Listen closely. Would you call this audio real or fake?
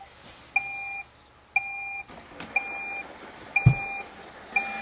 real